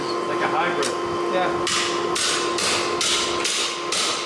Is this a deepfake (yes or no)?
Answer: no